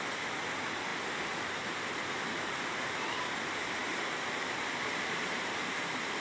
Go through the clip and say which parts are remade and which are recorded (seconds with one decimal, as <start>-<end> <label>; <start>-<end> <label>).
0.0-6.2 remade